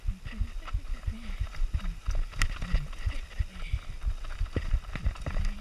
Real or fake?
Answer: real